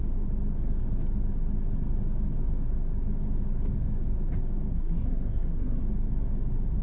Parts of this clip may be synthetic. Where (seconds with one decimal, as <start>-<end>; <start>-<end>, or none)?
4.7-5.8